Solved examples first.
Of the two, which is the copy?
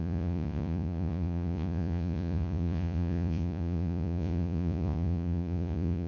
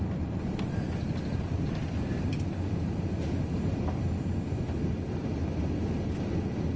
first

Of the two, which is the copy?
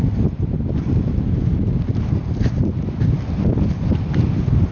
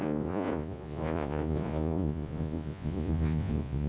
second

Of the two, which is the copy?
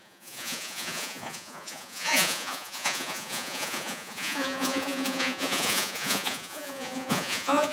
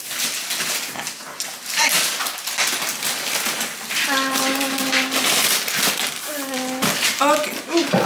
first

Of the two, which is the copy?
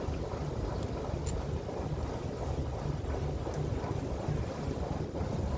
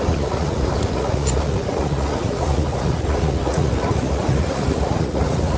second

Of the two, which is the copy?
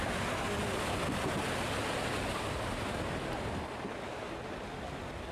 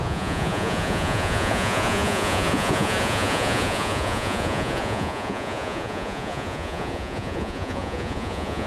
second